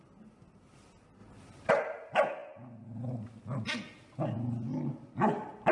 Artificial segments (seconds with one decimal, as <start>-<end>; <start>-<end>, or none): none